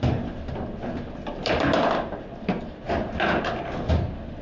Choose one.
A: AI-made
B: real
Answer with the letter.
B